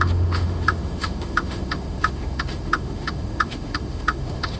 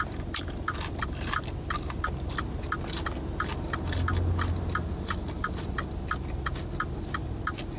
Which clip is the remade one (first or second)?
first